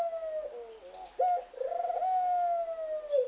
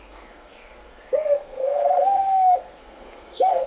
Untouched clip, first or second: first